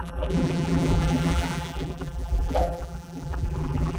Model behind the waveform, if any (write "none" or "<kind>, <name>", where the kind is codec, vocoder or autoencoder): vocoder, BigVGAN v2